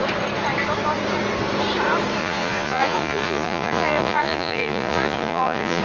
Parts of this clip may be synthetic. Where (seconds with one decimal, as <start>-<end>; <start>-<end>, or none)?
2.2-5.8